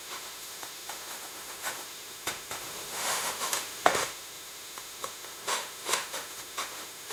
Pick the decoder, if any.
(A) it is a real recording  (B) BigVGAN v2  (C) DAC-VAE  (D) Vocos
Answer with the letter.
C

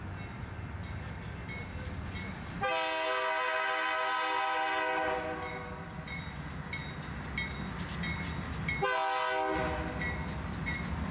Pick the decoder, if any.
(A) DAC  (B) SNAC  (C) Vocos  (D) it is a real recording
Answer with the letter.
D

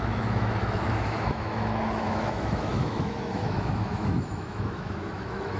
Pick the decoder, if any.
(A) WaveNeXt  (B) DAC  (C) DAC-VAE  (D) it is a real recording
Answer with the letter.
C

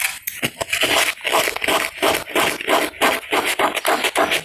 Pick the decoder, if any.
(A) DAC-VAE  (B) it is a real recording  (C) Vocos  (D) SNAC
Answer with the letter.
B